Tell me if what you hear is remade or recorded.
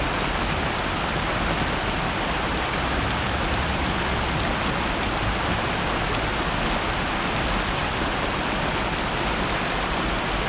recorded